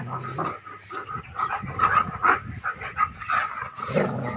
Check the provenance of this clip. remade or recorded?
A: recorded